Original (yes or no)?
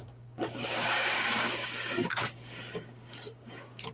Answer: no